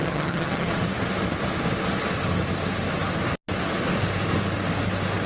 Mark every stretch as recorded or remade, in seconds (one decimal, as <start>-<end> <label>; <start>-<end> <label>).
0.0-0.7 remade; 0.7-5.3 recorded